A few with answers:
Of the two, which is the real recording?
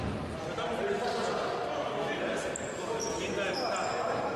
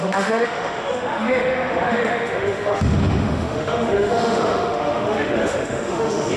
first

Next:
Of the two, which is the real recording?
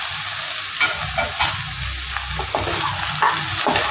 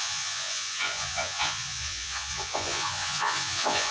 first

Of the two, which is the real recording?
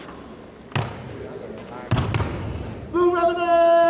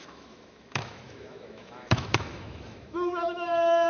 first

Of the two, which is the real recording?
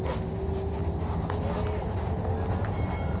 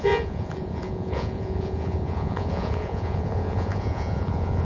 first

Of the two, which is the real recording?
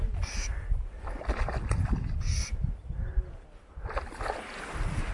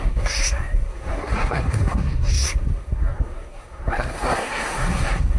first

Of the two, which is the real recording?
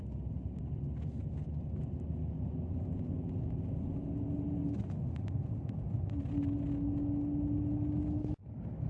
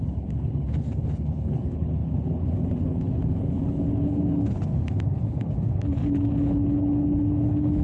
first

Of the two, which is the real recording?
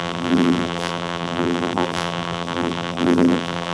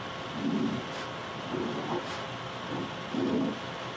second